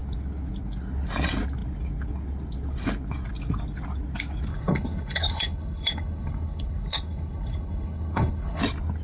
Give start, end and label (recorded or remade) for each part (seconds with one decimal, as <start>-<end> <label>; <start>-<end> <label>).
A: 0.0-4.5 recorded; 4.5-8.6 remade; 8.6-9.0 recorded